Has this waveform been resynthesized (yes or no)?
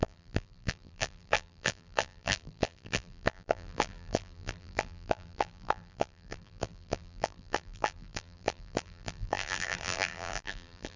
yes